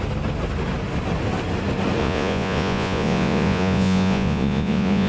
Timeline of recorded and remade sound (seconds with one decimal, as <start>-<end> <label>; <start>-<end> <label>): 0.0-2.0 recorded; 2.0-5.1 remade